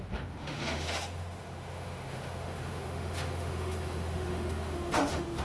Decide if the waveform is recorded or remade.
remade